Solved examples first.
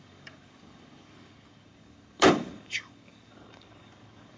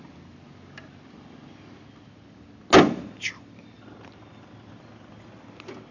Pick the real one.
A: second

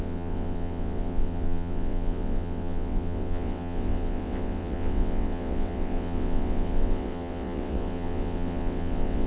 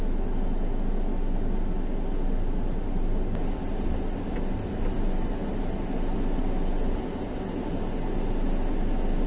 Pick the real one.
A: second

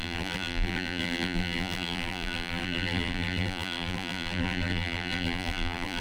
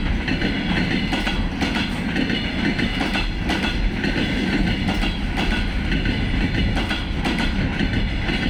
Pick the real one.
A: second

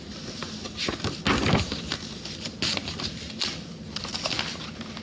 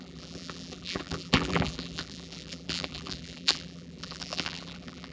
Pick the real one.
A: first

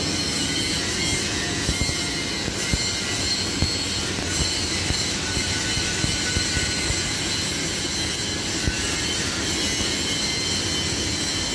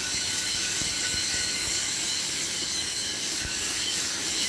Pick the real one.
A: first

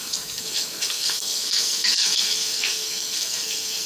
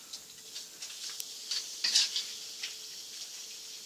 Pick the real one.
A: second